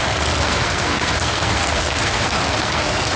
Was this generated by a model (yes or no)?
yes